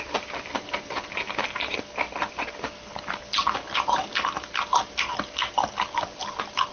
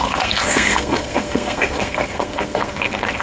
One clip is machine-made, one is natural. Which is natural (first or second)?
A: first